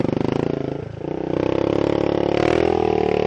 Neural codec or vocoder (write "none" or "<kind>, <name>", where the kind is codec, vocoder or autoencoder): none